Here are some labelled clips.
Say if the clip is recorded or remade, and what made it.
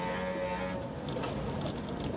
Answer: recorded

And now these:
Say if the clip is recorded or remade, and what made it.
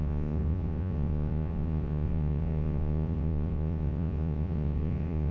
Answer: remade, vocoder, Vocos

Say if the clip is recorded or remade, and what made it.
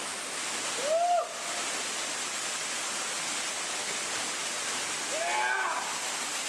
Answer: recorded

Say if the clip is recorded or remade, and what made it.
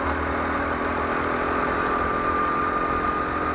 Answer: recorded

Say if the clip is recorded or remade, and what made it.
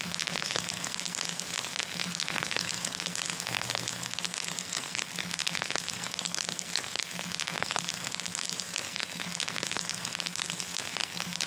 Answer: remade, codec, SNAC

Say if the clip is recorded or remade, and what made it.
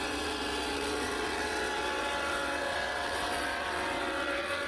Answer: remade, vocoder, WaveNeXt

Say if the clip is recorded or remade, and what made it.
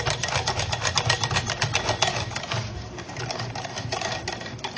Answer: recorded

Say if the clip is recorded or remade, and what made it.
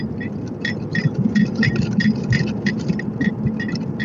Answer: recorded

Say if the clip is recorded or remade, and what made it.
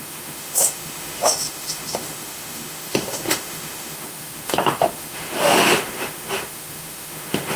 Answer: remade, autoencoder, DAC-VAE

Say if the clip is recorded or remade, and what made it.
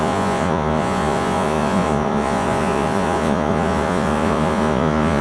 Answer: remade, vocoder, Vocos